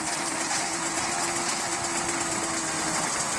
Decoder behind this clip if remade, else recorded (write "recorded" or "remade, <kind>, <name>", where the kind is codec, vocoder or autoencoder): recorded